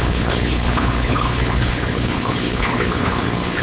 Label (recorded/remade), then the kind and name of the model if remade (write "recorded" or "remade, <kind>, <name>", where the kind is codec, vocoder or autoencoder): remade, codec, HILCodec